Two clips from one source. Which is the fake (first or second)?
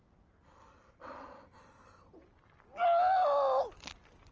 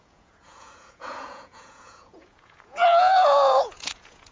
second